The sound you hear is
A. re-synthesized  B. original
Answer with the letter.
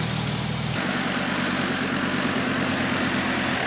B